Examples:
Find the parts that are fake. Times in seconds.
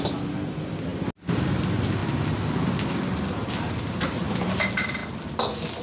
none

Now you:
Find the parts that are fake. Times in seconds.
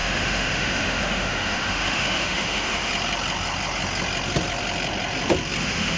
0.0-2.9 (autoencoder, DAC-VAE); 5.6-6.0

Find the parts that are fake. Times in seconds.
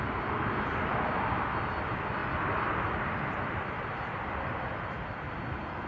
2.2-5.4 (vocoder, BigVGAN v2)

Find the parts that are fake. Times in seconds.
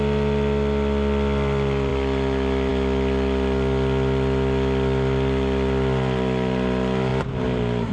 none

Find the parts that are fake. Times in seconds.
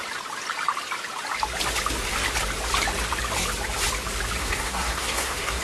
4.4-5.6 (codec, SNAC)